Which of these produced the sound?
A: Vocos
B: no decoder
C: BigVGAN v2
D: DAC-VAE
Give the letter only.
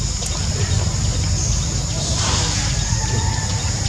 B